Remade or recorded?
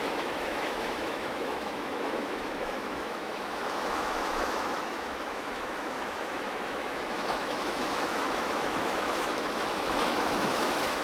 remade